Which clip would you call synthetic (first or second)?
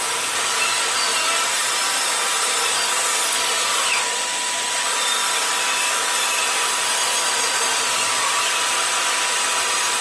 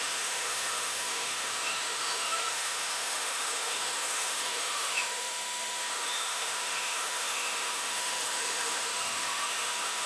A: second